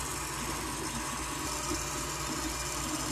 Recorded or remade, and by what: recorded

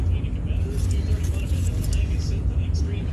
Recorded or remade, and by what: recorded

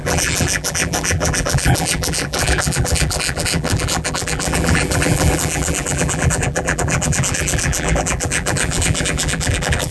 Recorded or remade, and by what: remade, vocoder, BigVGAN v2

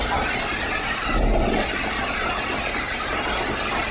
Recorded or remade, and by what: recorded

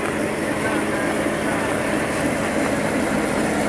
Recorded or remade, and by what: recorded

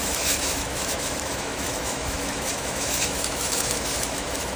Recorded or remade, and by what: remade, autoencoder, DAC-VAE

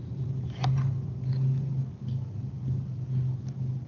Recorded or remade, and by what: recorded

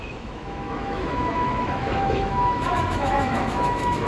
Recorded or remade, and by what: remade, autoencoder, DAC-VAE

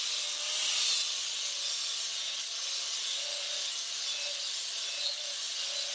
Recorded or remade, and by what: recorded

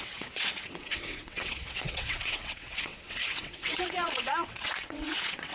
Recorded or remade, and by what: remade, vocoder, WaveNeXt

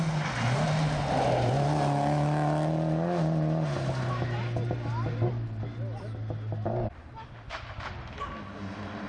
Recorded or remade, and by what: recorded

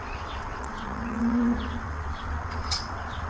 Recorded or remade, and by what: remade, vocoder, WaveNeXt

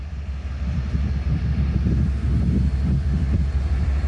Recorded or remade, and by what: recorded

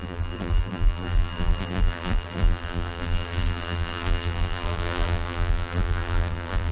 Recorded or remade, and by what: remade, vocoder, BigVGAN v2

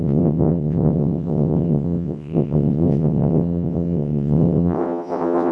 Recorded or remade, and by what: remade, vocoder, WaveNeXt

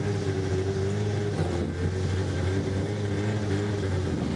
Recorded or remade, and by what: recorded